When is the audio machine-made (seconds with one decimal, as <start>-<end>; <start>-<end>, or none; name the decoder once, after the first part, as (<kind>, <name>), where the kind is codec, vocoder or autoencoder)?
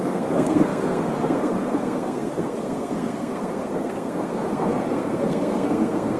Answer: 0.0-6.2 (codec, SNAC)